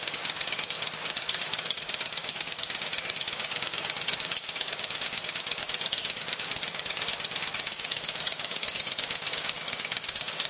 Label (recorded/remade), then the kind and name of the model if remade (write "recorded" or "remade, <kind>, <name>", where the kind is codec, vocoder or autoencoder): remade, codec, DAC